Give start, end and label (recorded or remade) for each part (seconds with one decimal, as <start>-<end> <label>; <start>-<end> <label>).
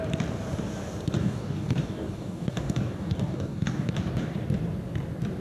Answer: 0.0-1.2 recorded; 1.2-3.9 remade; 3.9-5.4 recorded